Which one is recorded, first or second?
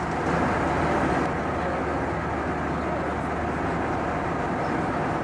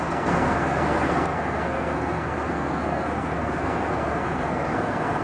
first